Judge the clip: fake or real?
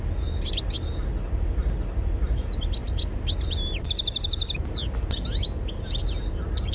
real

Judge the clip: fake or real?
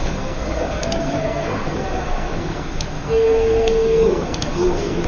fake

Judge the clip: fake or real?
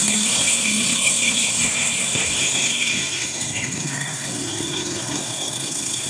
fake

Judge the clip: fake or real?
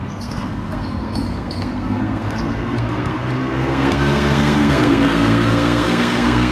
fake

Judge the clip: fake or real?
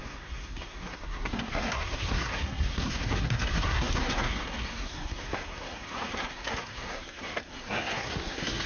fake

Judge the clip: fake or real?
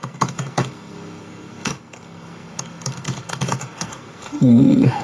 fake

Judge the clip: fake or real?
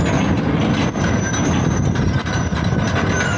real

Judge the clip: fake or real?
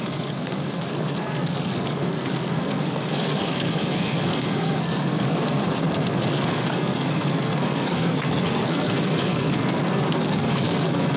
fake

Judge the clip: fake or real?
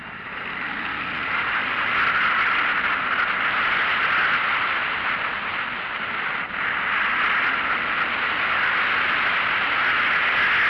real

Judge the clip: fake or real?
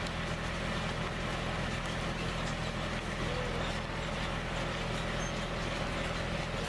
real